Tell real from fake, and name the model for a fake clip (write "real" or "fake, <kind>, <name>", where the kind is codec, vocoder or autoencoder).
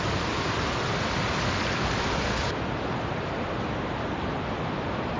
real